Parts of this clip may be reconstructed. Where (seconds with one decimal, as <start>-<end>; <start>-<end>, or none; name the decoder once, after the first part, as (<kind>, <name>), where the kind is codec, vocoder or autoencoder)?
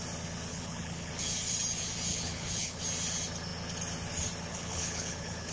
0.5-1.1 (codec, HILCodec); 2.1-2.8; 4.5-5.5